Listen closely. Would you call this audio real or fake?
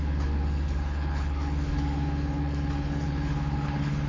fake